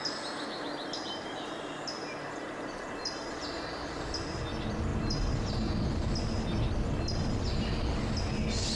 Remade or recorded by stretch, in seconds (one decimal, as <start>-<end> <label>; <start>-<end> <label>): 0.0-0.8 recorded; 0.8-3.0 remade; 3.0-4.9 recorded; 4.9-5.7 remade; 5.7-8.8 recorded